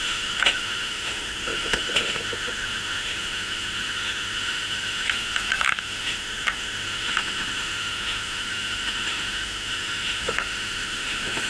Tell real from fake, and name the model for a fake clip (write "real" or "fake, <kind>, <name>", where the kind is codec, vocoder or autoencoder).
fake, autoencoder, DAC-VAE